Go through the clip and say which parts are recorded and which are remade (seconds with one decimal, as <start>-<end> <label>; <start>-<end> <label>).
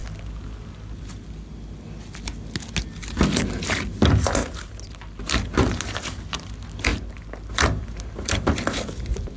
0.0-9.4 recorded